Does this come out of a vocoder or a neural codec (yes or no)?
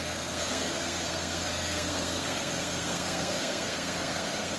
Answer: yes